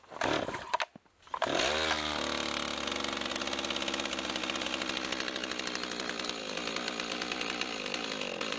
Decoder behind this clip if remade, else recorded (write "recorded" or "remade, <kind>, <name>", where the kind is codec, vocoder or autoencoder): recorded